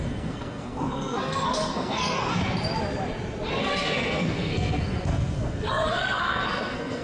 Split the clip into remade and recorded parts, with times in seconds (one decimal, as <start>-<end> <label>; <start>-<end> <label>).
0.0-2.2 remade; 2.2-3.6 recorded; 3.6-7.0 remade